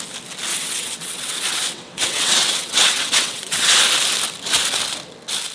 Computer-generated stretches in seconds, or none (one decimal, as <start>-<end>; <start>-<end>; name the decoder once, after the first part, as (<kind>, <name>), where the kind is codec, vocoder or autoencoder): 0.5-3.8 (vocoder, WaveNeXt)